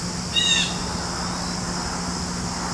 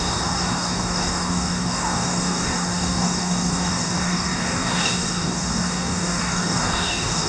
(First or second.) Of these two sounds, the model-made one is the second